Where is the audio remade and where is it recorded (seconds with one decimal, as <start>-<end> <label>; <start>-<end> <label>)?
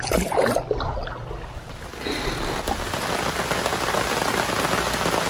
0.0-5.3 recorded